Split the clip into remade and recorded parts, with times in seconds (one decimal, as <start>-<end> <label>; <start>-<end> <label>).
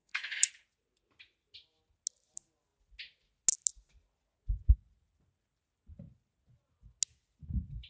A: 0.0-0.5 remade; 0.5-7.9 recorded